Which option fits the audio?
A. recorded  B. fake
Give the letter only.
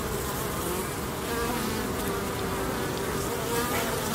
A